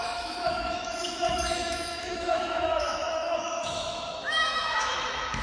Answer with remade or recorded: remade